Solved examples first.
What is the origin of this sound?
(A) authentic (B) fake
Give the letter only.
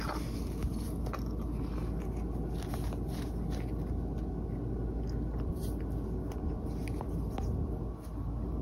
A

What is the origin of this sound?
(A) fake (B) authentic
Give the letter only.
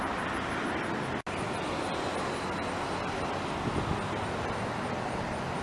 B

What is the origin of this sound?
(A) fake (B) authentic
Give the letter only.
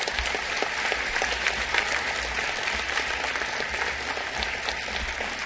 B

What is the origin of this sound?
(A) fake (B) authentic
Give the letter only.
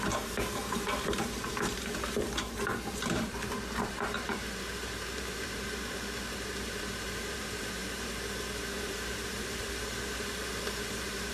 A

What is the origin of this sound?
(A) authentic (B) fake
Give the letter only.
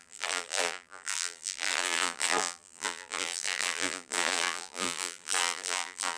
B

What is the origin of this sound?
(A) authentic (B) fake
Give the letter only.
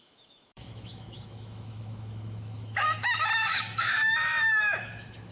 B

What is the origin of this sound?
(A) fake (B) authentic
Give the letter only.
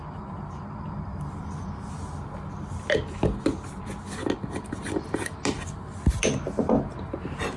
B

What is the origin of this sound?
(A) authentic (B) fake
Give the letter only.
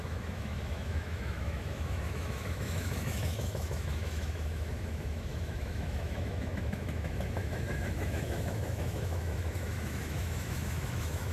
B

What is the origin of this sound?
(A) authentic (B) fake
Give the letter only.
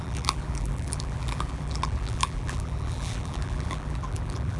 B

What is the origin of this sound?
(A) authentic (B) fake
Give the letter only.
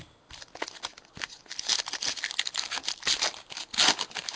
A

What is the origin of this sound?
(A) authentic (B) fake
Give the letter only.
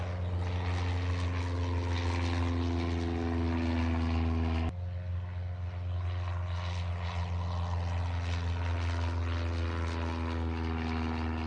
A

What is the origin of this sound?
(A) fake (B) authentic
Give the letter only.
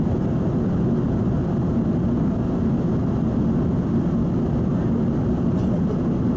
B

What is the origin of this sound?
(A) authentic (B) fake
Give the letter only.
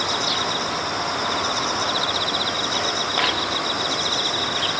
A